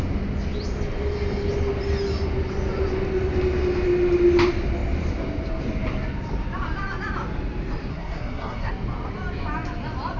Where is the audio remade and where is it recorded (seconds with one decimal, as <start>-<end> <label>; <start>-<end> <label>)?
0.0-7.9 recorded; 7.9-8.7 remade; 8.7-10.2 recorded